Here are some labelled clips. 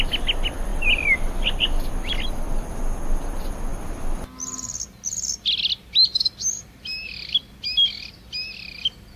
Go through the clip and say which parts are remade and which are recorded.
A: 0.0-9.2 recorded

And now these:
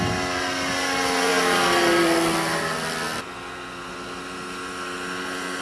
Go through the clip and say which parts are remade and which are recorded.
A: 0.0-5.6 recorded

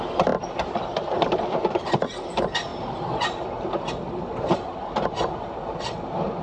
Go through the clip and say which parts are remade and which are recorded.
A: 0.0-6.4 recorded

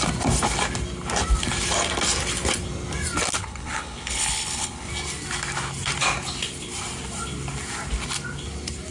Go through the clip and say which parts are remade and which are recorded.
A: 0.0-3.4 recorded; 3.4-4.9 remade; 4.9-8.9 recorded

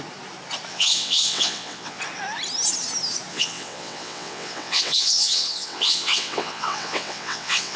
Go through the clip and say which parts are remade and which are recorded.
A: 0.0-0.7 recorded; 0.7-2.0 remade; 2.0-3.3 recorded; 3.3-7.8 remade

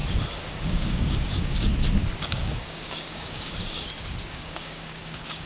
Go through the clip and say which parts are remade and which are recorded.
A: 0.0-0.6 recorded; 0.6-1.7 remade; 1.7-2.2 recorded; 2.2-3.6 remade; 3.6-4.2 recorded; 4.2-5.5 remade

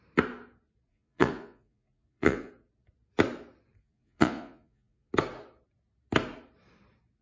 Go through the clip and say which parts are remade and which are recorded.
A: 0.0-0.9 recorded; 0.9-2.5 remade; 2.5-3.8 recorded; 3.8-5.1 remade; 5.1-7.2 recorded